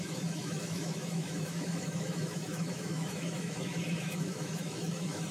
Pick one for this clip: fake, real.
fake